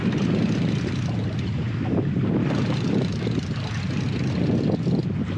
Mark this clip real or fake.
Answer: real